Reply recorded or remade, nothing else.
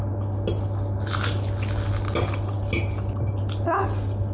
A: recorded